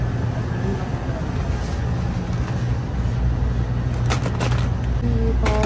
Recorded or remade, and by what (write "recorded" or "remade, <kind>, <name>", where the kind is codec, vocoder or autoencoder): recorded